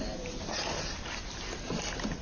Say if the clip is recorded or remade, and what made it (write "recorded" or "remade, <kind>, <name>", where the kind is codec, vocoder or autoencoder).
recorded